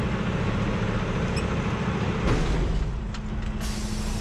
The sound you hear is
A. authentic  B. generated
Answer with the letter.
A